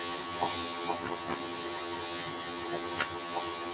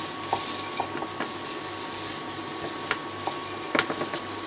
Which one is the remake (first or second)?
first